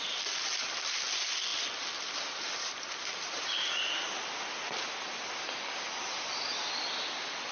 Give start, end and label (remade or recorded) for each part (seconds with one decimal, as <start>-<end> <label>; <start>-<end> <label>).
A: 0.0-7.5 recorded